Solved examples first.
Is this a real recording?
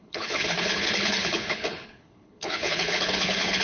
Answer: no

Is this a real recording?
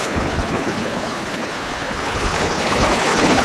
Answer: no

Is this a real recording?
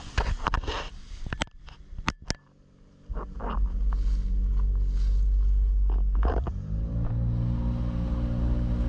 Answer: yes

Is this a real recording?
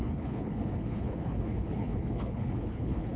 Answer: no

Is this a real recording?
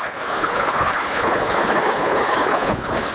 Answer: no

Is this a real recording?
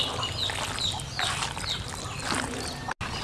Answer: yes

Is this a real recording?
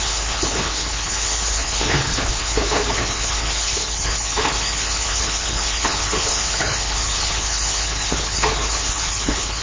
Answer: no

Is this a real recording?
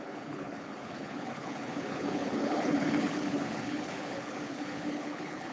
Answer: no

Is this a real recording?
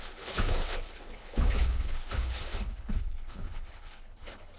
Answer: no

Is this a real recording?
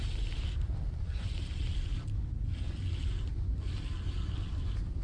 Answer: yes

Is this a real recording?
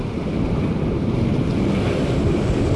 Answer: yes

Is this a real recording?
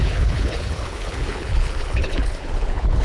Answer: no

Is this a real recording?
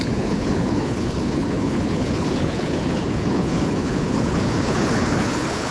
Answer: no